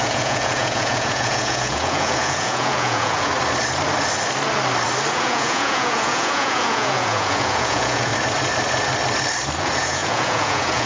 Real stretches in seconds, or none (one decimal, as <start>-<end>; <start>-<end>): 3.3-5.1; 8.1-9.6

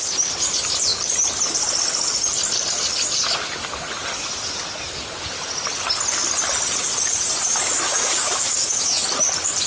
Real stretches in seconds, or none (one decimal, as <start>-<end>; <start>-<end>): 0.0-7.5; 9.0-9.7

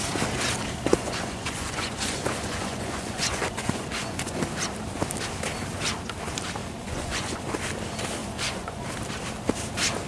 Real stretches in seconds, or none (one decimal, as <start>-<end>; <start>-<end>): 0.0-0.9; 4.4-6.6; 7.4-8.2; 8.8-10.1

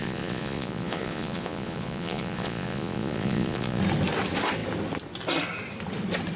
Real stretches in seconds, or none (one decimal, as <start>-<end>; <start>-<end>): 3.8-6.4

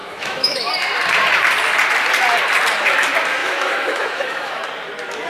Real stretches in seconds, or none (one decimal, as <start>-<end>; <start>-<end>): 0.7-3.4; 4.6-5.3

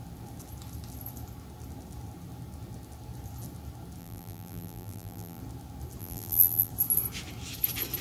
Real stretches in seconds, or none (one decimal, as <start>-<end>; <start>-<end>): 0.0-4.0; 5.4-6.0; 6.7-8.0

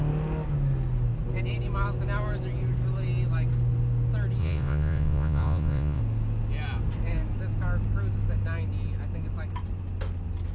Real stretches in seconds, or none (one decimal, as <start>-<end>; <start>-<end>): 0.0-4.4; 6.0-10.5